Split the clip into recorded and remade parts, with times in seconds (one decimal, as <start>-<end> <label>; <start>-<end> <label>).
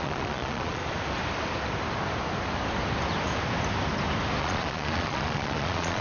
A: 0.0-0.8 remade; 0.8-4.4 recorded; 4.4-6.0 remade